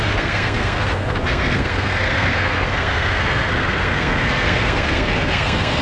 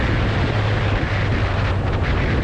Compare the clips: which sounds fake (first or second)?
first